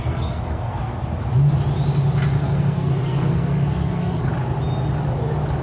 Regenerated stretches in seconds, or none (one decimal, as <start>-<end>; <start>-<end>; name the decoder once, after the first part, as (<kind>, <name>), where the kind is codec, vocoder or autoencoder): 0.0-0.9 (codec, SNAC); 2.4-4.3

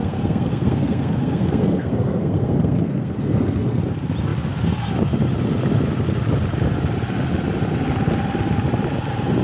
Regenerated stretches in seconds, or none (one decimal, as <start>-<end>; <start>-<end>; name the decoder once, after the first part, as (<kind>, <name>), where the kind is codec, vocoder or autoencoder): 0.0-3.8 (codec, SNAC)

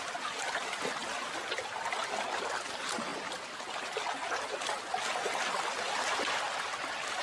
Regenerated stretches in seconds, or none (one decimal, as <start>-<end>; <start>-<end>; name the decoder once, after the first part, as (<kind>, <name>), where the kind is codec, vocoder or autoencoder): none